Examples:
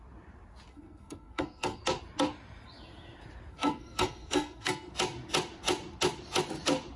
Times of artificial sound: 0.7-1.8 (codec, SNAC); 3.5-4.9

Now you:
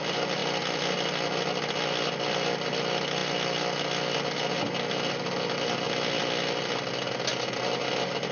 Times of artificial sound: none

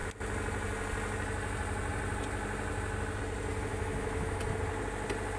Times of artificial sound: 3.7-4.4 (autoencoder, DAC-VAE)

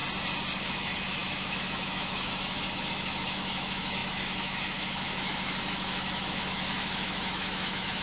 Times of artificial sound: 0.6-8.0 (autoencoder, DAC-VAE)

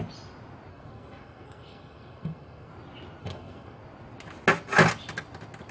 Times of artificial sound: 0.7-2.7 (codec, SNAC); 3.2-3.8

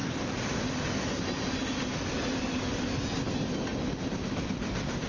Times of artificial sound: 0.0-1.0 (vocoder, BigVGAN v2)

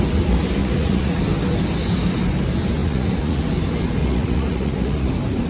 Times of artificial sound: 0.6-1.2 (vocoder, Vocos); 2.8-3.4; 4.0-5.1

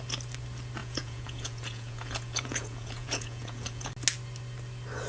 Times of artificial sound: 0.8-3.9 (vocoder, Vocos)